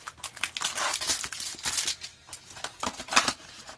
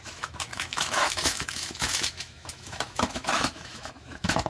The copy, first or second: second